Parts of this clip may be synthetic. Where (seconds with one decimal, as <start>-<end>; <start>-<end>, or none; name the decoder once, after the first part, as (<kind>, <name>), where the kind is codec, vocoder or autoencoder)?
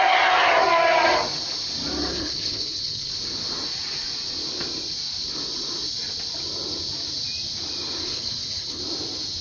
2.1-3.1 (codec, HILCodec); 8.0-8.8